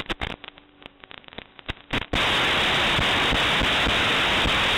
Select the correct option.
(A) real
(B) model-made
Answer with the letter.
A